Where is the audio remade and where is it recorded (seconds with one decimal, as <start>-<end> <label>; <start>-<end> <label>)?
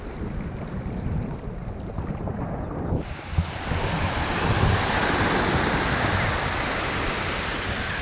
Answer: 0.0-8.0 recorded